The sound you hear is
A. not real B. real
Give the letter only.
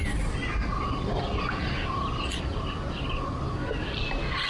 B